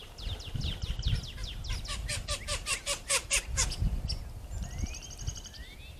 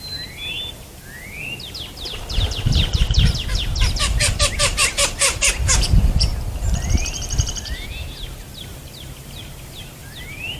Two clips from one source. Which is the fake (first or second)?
second